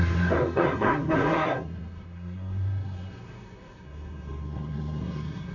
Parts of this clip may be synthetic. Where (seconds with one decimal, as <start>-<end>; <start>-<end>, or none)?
0.0-5.5